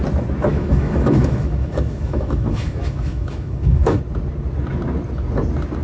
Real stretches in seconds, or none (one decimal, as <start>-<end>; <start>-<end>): 0.0-0.5; 4.0-5.8